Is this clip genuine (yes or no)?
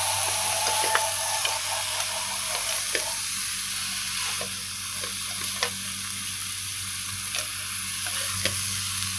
yes